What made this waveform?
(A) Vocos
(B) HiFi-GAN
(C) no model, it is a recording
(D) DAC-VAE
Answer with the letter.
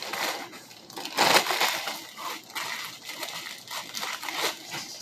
C